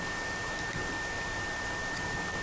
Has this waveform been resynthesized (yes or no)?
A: yes